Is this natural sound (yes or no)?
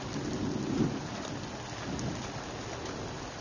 yes